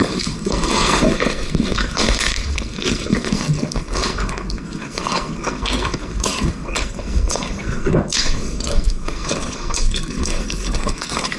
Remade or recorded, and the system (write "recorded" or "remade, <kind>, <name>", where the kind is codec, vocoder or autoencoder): remade, codec, SNAC